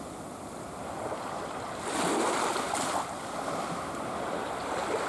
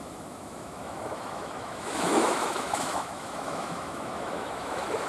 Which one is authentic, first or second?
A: first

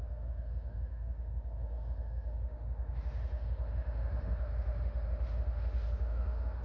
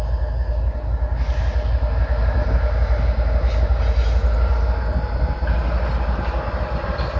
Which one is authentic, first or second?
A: second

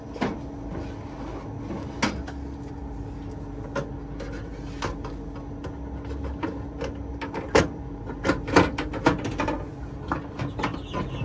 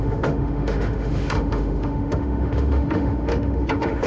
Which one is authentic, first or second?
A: first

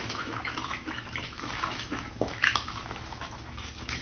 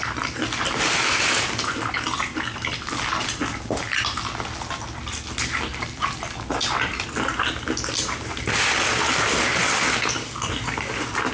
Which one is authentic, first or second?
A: second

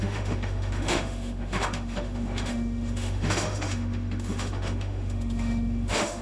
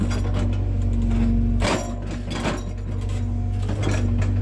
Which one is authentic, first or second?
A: second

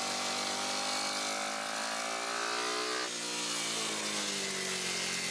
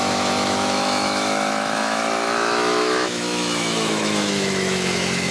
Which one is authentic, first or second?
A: first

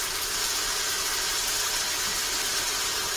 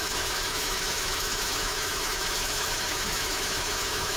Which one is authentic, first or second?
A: first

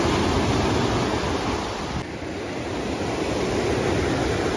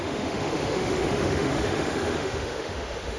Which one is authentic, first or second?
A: first